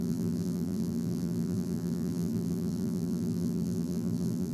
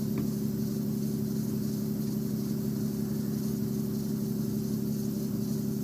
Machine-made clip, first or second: first